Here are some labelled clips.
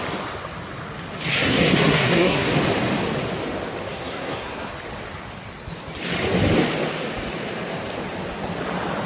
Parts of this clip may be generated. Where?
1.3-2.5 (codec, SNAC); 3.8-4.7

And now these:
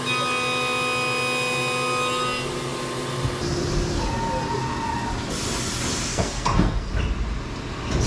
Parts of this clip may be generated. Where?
6.1-6.9 (codec, SNAC)

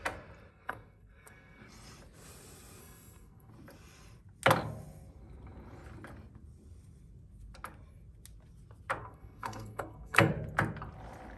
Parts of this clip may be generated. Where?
0.5-1.6 (codec, SNAC); 2.8-3.5; 9.0-10.3

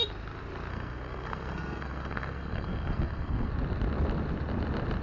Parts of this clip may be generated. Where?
0.7-3.5 (codec, SNAC)

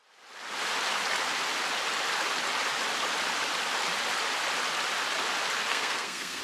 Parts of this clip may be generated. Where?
5.7-6.4 (codec, SNAC)